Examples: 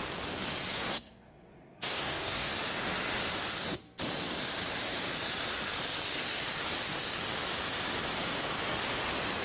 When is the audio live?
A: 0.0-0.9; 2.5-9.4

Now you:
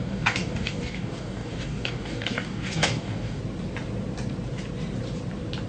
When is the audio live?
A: 3.4-5.7

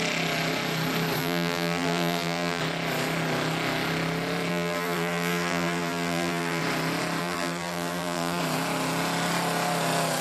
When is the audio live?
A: 0.0-1.2; 2.6-4.5; 6.6-7.2; 8.4-10.2

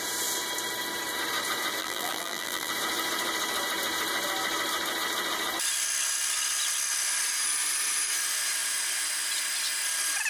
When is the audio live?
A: 0.0-1.8; 2.7-10.3

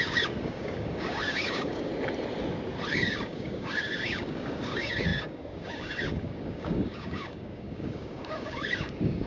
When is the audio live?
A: 1.9-2.9